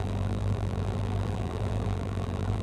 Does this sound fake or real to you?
fake